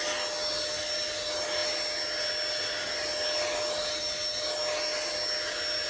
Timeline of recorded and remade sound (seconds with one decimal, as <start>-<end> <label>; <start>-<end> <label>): 0.0-5.9 recorded